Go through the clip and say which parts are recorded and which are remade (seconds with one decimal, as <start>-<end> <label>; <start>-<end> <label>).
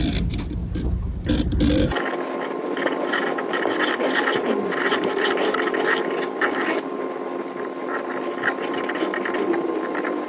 0.0-10.3 recorded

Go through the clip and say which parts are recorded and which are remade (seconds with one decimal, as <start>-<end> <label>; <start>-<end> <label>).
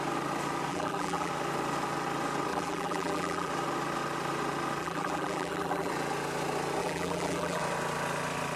0.0-0.7 recorded; 0.7-1.3 remade; 1.3-2.5 recorded; 2.5-3.5 remade; 3.5-4.8 recorded; 4.8-5.9 remade; 5.9-6.8 recorded; 6.8-7.6 remade; 7.6-8.6 recorded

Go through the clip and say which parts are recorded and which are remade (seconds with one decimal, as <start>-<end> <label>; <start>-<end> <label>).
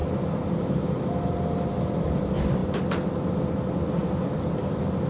0.0-5.1 recorded